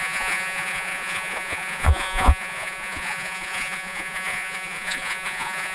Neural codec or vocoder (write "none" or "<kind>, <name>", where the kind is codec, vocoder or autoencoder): vocoder, Vocos